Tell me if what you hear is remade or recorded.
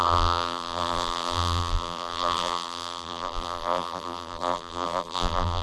remade